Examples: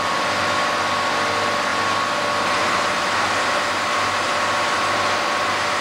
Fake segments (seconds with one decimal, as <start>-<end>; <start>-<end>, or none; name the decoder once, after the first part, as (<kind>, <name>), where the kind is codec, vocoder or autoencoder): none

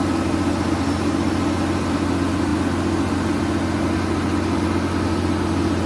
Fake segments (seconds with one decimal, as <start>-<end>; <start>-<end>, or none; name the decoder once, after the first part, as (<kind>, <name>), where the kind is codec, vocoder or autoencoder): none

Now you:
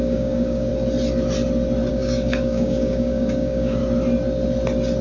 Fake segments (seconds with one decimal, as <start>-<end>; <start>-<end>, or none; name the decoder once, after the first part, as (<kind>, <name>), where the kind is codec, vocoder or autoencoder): 0.0-0.7 (codec, DAC); 1.9-3.8

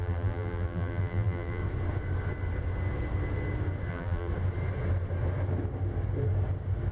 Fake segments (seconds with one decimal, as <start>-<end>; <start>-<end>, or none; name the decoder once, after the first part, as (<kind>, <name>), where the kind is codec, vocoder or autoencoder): 0.0-1.6 (vocoder, BigVGAN v2); 3.9-4.3

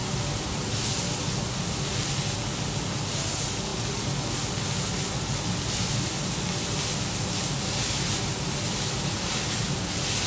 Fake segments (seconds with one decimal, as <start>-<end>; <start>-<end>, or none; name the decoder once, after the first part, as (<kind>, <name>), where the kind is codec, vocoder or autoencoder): none

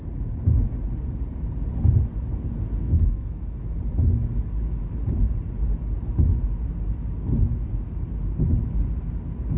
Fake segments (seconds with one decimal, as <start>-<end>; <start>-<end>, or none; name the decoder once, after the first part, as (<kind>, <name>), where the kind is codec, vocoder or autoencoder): 2.8-3.6 (codec, SNAC)

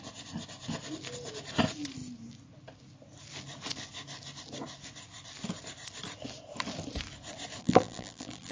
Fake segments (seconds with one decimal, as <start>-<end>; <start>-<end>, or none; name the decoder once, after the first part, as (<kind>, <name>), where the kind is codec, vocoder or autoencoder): 7.6-8.5 (vocoder, BigVGAN v2)